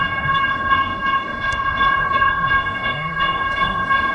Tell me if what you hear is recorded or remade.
remade